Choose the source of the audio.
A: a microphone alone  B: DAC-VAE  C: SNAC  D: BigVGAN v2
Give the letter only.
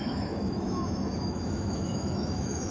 B